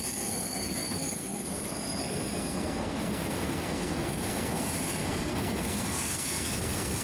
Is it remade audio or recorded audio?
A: remade